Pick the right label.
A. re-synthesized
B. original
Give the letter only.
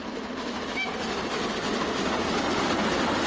B